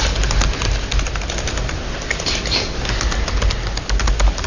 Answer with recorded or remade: recorded